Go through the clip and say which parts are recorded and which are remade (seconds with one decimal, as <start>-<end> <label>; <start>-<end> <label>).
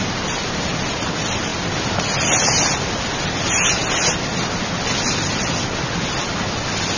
0.0-7.0 recorded